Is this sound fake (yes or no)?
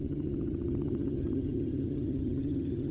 yes